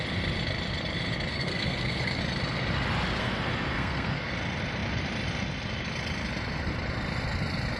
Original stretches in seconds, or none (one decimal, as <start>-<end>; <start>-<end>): 0.0-1.3; 2.2-3.2; 4.3-7.8